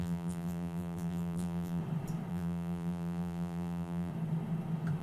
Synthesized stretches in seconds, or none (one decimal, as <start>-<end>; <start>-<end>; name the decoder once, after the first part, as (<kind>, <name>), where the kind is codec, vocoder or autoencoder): 0.0-1.8 (vocoder, BigVGAN v2); 2.3-4.1

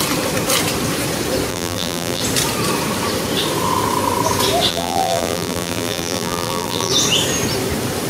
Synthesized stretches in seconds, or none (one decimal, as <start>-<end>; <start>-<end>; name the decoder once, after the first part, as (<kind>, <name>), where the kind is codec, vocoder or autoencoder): 1.5-2.2 (vocoder, BigVGAN v2); 4.7-6.9

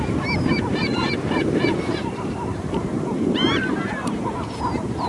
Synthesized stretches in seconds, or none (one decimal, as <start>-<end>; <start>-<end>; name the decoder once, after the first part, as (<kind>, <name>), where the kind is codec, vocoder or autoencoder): 0.0-5.1 (vocoder, BigVGAN v2)

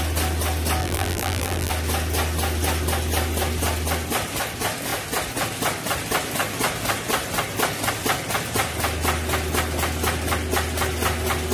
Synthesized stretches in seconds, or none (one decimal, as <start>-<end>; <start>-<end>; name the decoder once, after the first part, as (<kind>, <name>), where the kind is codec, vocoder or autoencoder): 0.8-1.7 (vocoder, BigVGAN v2)

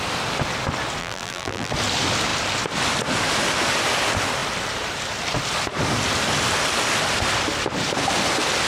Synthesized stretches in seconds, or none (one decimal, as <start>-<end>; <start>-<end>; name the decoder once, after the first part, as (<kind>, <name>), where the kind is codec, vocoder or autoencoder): 1.0-1.7 (vocoder, BigVGAN v2)

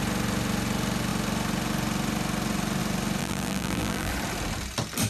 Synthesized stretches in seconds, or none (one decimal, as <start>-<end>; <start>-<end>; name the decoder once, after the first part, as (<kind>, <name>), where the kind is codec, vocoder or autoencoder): 3.2-4.1 (vocoder, BigVGAN v2)

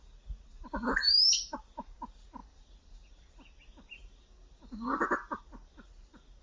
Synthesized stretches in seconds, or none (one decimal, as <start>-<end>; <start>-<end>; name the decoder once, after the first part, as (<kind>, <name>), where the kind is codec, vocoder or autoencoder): 2.4-5.4 (vocoder, BigVGAN v2)